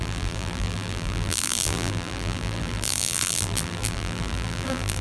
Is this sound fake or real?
fake